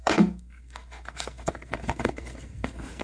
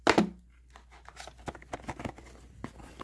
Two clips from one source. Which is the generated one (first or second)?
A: first